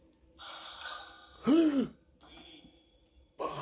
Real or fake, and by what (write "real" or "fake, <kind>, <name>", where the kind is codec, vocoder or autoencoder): real